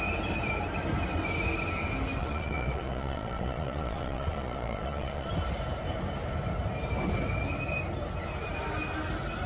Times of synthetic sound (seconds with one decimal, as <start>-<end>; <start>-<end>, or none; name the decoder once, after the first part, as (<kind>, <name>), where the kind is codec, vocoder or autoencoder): 2.2-5.3 (vocoder, Vocos)